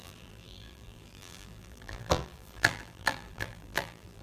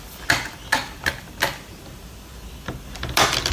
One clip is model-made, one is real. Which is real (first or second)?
second